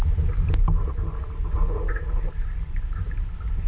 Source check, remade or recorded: recorded